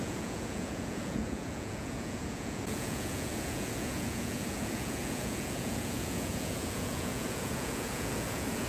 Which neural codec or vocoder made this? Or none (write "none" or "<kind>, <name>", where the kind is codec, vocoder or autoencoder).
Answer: vocoder, Vocos